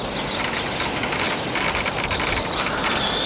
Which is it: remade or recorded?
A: recorded